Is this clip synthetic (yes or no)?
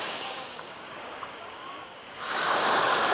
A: yes